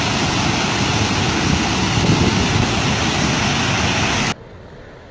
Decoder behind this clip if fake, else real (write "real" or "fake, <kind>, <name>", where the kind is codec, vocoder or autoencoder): real